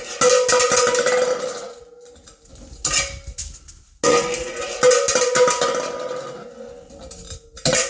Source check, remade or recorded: recorded